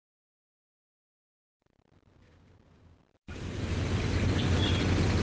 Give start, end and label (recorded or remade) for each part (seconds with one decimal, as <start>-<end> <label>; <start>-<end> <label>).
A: 0.0-1.3 recorded; 1.3-4.4 remade; 4.4-5.2 recorded